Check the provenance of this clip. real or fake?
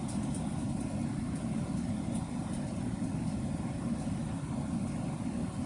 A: real